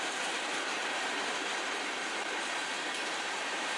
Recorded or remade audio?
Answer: remade